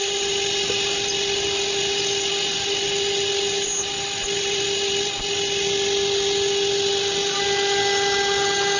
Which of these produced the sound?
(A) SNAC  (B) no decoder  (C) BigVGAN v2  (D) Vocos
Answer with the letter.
B